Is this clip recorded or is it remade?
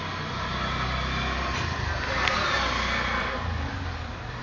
recorded